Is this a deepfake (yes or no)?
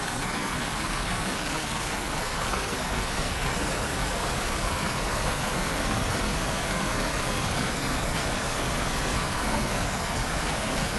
yes